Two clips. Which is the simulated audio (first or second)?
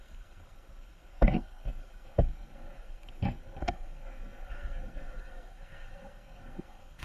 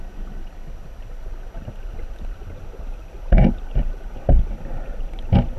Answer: first